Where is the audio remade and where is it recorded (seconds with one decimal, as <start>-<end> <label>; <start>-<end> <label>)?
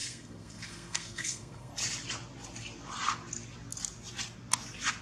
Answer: 0.0-1.7 remade; 1.7-5.0 recorded